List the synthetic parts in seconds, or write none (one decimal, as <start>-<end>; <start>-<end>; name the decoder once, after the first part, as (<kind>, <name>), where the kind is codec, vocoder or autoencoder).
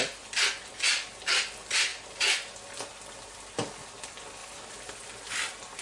4.4-4.9 (vocoder, BigVGAN v2)